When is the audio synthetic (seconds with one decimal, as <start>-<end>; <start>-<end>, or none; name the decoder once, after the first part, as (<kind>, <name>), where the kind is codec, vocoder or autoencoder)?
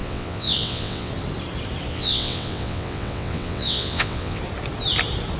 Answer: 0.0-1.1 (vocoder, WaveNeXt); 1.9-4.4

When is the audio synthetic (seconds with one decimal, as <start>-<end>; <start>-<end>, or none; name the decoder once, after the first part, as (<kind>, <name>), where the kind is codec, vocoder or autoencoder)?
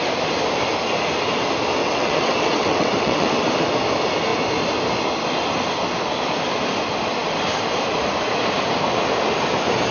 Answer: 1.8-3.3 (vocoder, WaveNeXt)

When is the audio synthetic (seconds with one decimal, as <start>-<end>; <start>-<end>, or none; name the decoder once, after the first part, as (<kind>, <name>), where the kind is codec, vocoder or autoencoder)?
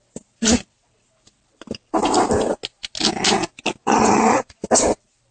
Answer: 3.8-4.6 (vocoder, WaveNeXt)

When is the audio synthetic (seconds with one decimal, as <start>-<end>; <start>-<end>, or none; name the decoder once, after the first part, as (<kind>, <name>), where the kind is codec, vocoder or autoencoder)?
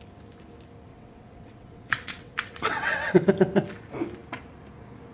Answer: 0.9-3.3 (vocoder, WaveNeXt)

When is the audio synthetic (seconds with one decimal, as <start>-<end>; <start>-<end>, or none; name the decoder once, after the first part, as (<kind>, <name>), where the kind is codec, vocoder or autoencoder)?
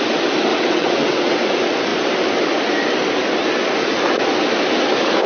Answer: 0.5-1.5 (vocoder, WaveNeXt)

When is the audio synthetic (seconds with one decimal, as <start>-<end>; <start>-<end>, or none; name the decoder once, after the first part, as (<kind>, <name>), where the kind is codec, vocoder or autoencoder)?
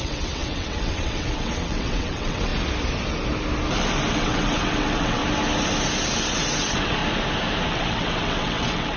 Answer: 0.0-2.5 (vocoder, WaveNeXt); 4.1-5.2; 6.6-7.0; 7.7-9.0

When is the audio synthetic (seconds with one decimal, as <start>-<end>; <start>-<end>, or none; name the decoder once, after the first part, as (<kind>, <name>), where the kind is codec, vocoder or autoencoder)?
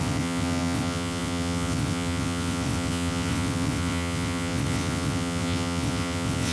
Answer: 0.0-6.5 (vocoder, WaveNeXt)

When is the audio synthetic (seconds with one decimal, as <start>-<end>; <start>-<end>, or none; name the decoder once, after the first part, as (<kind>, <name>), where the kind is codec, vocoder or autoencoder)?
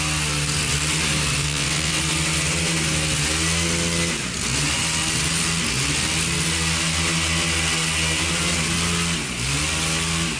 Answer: 1.4-2.0 (vocoder, WaveNeXt)